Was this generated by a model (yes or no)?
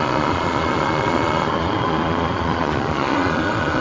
yes